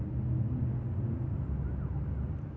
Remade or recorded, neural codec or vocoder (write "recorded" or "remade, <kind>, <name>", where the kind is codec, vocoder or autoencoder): recorded